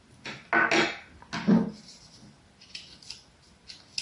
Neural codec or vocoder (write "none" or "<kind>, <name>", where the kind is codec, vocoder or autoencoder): none